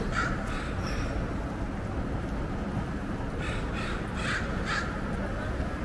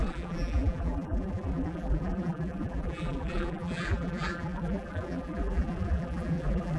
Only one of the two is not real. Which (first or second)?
second